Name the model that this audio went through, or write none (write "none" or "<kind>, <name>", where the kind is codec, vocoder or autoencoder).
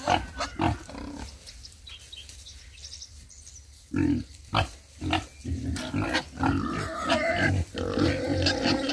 none